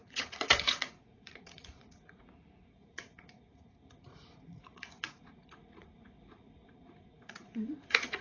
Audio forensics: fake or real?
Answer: fake